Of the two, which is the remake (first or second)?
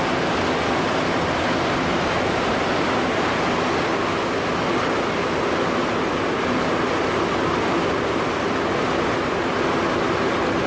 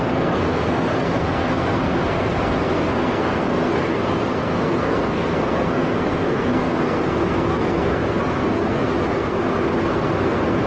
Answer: second